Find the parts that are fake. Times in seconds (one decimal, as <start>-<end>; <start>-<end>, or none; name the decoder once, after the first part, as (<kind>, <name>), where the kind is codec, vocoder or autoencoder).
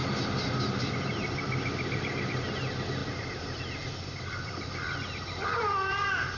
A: 0.8-6.4 (vocoder, BigVGAN v2)